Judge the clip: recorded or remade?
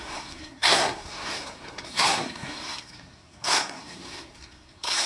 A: remade